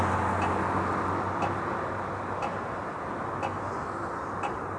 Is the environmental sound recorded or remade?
recorded